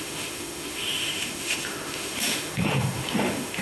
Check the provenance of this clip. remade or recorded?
remade